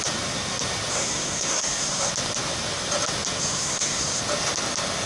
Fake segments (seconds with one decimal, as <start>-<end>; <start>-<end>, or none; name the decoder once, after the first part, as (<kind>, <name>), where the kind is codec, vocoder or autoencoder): 0.9-2.1 (codec, SNAC); 3.4-4.2